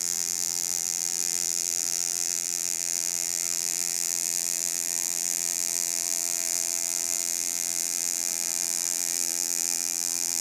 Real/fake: fake